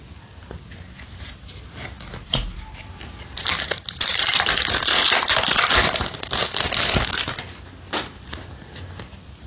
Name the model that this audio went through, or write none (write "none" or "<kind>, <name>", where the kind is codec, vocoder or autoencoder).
none